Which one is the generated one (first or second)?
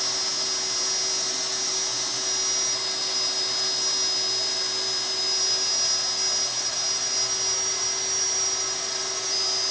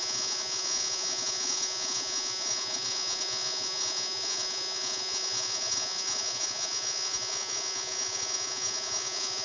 second